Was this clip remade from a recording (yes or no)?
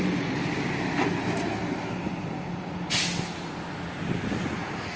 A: no